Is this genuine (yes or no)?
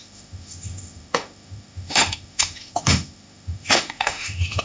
no